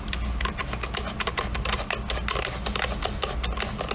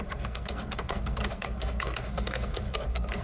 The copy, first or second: second